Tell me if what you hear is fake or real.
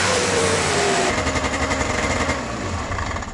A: fake